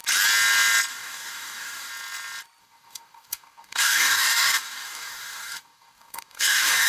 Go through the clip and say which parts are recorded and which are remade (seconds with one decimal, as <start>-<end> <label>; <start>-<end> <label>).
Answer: 0.0-0.9 recorded; 0.9-1.9 remade; 1.9-2.6 recorded; 2.6-6.9 remade